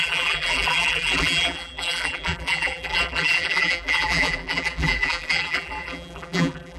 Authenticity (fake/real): fake